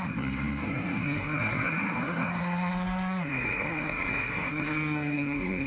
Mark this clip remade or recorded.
remade